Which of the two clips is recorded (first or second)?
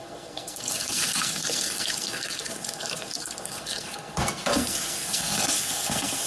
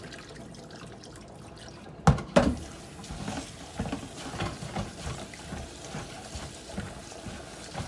second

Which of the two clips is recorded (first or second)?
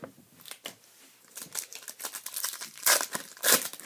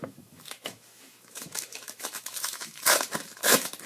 first